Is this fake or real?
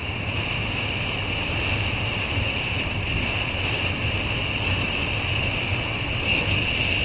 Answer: real